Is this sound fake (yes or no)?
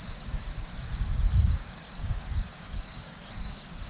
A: yes